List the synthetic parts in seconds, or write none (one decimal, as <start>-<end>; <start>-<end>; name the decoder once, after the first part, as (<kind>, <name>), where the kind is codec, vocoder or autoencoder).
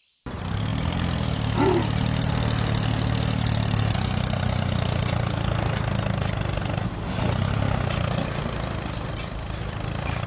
none